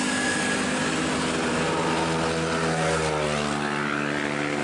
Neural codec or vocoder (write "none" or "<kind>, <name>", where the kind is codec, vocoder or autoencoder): none